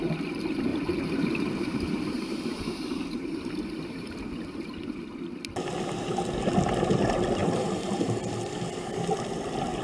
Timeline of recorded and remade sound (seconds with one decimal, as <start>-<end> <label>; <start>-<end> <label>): 0.0-0.7 recorded; 0.7-5.0 remade; 5.0-7.4 recorded; 7.4-8.1 remade; 8.1-9.8 recorded